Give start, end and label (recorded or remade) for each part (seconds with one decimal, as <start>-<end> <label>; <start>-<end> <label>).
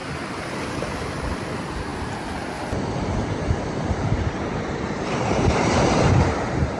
0.0-0.7 recorded; 0.7-6.8 remade